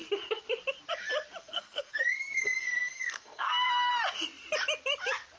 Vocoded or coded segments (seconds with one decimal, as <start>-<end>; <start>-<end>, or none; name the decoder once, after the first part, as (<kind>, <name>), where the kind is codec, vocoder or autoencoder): 1.4-3.9 (codec, SNAC)